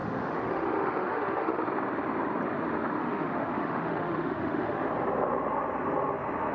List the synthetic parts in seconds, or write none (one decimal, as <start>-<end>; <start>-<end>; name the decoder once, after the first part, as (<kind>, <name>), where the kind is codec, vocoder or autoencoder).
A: 0.0-1.6 (autoencoder, DAC-VAE); 3.0-4.9